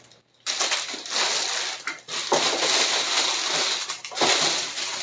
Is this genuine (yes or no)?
yes